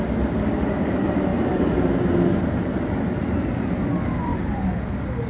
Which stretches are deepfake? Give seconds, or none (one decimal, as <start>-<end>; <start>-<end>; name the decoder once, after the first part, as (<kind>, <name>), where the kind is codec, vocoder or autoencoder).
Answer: none